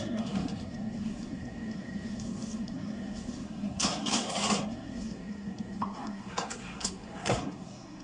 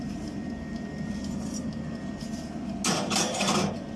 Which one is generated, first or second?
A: first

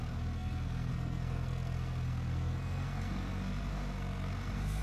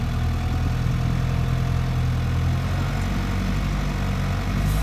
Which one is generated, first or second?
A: first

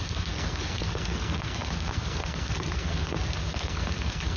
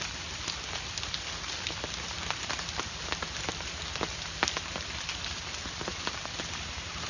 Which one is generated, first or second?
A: first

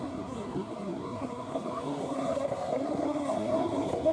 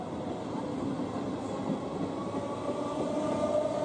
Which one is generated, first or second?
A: first